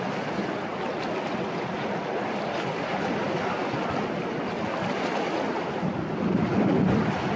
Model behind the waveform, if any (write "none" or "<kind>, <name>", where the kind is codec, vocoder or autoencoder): none